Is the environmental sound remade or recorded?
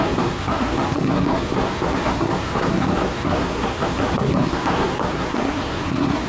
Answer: remade